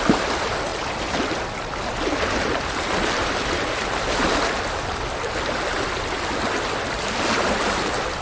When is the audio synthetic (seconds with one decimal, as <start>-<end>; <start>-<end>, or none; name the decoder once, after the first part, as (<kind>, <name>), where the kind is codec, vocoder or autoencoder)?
none